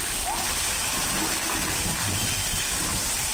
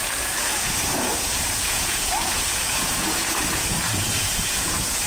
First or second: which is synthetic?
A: second